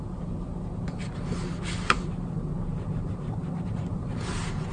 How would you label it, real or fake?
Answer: real